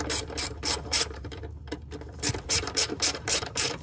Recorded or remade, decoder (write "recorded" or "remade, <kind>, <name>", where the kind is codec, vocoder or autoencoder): remade, vocoder, BigVGAN v2